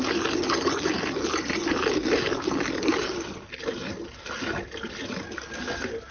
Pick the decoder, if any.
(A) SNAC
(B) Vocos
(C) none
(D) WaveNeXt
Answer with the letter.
C